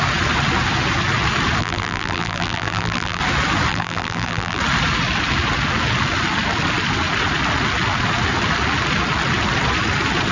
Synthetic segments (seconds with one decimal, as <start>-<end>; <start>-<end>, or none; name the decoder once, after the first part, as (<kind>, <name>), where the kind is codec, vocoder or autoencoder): 1.6-3.2 (vocoder, BigVGAN v2); 3.7-4.6